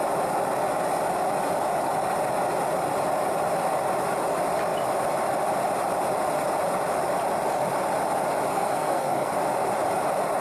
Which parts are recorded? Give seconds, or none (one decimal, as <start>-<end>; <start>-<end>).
0.0-8.5; 9.4-10.4